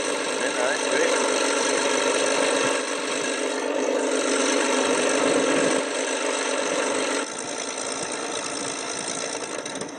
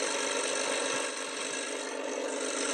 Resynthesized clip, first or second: first